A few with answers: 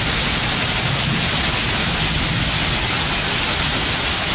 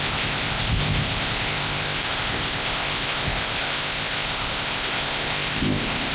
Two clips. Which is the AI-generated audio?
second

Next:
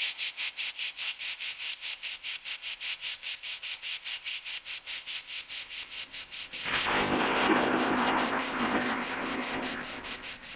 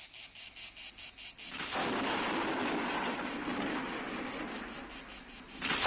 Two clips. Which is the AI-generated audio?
first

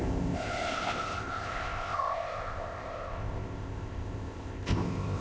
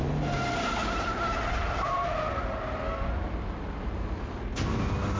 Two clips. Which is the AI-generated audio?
first